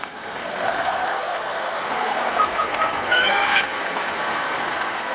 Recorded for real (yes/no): no